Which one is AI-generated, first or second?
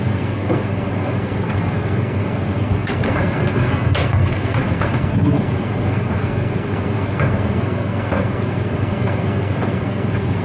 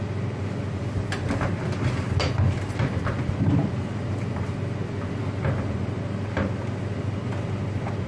first